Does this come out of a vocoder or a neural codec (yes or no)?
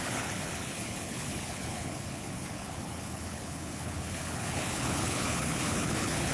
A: yes